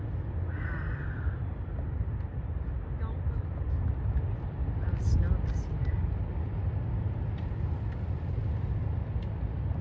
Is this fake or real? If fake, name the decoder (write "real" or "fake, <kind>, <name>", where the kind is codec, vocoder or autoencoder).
real